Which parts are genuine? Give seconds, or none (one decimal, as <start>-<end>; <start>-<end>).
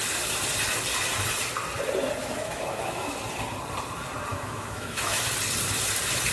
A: 0.0-2.2; 3.2-4.3; 5.3-6.3